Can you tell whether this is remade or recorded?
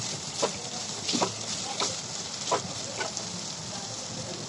recorded